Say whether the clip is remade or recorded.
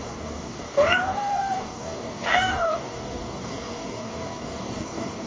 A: remade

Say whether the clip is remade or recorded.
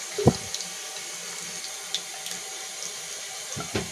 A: recorded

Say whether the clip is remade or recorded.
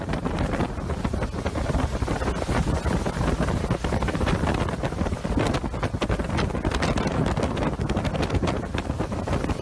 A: recorded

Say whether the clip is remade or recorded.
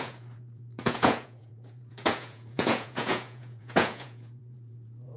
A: remade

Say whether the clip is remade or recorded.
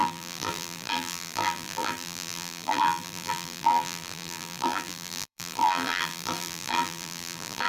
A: remade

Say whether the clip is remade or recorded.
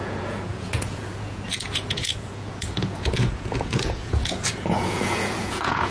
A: remade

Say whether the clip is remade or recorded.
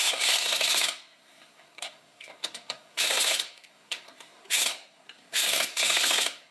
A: remade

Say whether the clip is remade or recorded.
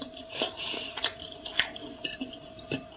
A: remade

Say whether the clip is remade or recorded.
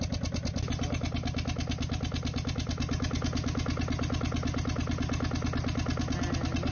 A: recorded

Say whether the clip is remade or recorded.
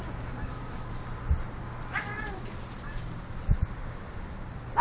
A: recorded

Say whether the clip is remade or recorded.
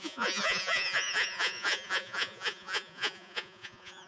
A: remade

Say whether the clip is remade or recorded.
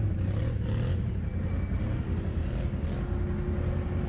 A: recorded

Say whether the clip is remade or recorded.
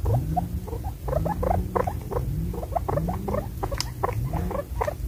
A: recorded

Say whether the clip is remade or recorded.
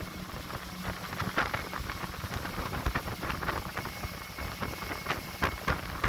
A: recorded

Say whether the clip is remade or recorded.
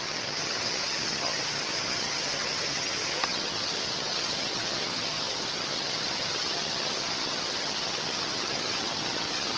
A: remade